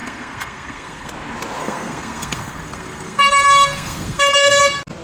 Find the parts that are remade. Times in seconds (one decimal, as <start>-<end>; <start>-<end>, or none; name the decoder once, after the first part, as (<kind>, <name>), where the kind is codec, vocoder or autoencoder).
0.0-1.1 (codec, SNAC); 1.6-4.6